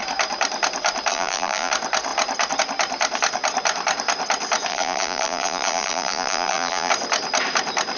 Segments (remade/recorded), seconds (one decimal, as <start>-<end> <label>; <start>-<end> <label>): 0.0-1.1 recorded; 1.1-1.7 remade; 1.7-4.7 recorded; 4.7-6.9 remade; 6.9-8.0 recorded